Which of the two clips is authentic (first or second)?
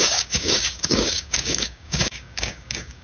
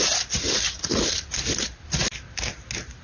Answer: second